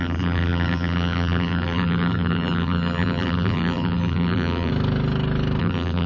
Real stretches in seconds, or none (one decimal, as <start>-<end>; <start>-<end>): 4.7-5.6